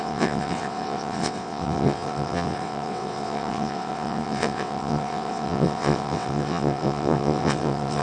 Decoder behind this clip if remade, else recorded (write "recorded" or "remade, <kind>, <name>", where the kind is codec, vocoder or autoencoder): remade, vocoder, WaveNeXt